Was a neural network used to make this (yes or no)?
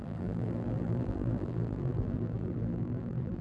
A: yes